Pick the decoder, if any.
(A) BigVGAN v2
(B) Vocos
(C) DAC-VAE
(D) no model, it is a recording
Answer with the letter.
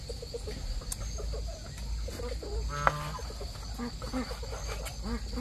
D